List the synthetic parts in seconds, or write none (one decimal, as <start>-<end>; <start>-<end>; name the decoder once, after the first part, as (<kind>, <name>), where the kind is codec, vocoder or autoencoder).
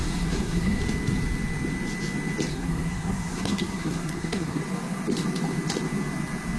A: 0.0-0.8 (codec, SNAC); 2.5-4.6